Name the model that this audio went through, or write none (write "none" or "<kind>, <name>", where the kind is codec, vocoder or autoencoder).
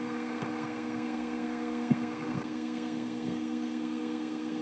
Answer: codec, SNAC